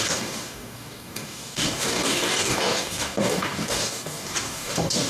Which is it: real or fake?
fake